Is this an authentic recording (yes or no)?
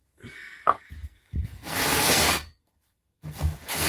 no